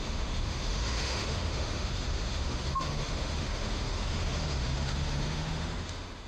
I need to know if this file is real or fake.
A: fake